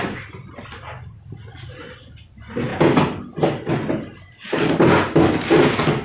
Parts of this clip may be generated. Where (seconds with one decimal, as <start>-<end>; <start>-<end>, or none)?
none